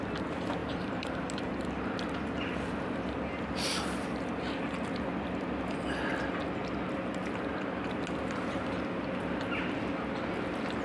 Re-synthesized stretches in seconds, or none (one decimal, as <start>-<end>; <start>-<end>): 0.6-1.2